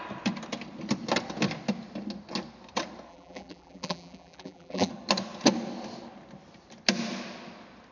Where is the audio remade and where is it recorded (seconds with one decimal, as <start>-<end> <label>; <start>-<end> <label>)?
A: 0.0-3.1 recorded; 3.1-4.9 remade; 4.9-7.9 recorded